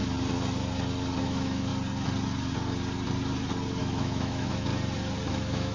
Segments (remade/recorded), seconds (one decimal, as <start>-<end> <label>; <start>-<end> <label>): 0.0-1.2 recorded; 1.2-1.7 remade; 1.7-3.8 recorded; 3.8-4.7 remade; 4.7-5.3 recorded; 5.3-5.7 remade